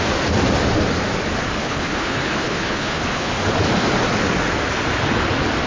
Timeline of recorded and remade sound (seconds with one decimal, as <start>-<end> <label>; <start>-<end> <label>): 0.0-1.6 recorded; 1.6-3.3 remade; 3.3-5.7 recorded